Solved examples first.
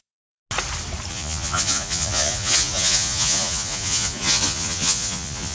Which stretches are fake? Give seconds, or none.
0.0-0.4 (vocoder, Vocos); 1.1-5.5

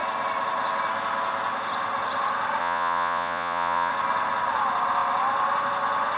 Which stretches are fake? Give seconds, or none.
2.6-3.9 (vocoder, Vocos)

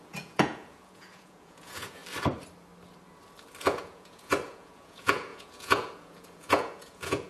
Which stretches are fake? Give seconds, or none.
0.0-2.0 (vocoder, Vocos); 3.6-7.3